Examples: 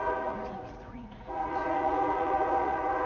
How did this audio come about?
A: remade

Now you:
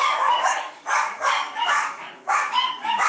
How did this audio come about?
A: remade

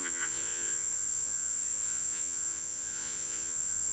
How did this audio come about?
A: remade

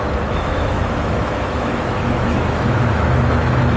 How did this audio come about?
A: remade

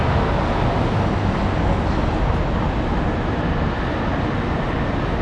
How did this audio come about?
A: recorded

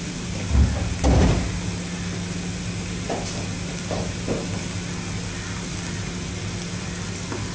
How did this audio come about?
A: recorded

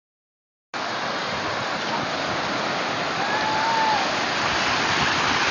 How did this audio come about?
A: recorded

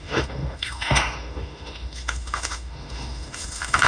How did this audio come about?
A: remade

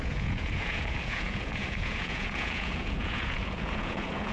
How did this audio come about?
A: remade